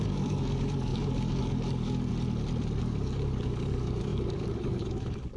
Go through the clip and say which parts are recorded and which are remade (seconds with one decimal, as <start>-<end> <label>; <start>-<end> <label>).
0.0-2.1 remade; 2.1-2.8 recorded; 2.8-5.4 remade